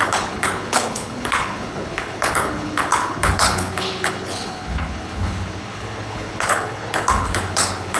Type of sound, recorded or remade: remade